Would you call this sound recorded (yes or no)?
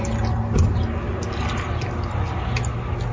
yes